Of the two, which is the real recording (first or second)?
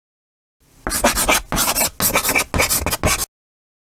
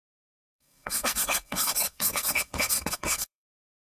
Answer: first